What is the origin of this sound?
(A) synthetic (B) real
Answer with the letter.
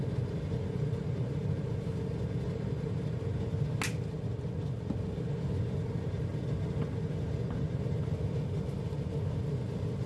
B